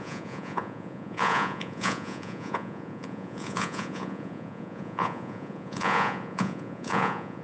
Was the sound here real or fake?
fake